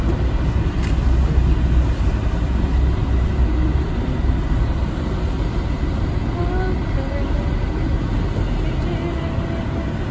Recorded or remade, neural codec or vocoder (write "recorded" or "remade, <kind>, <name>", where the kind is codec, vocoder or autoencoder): recorded